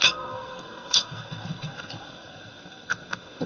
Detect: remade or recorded remade